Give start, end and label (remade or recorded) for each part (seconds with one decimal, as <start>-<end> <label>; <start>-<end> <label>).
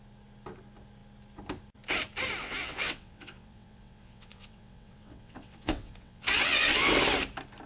0.0-2.4 recorded; 2.4-6.9 remade; 6.9-7.7 recorded